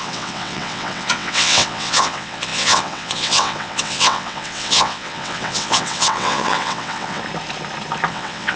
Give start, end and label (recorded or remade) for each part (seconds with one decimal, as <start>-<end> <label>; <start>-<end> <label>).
0.0-7.2 remade; 7.2-8.1 recorded; 8.1-8.6 remade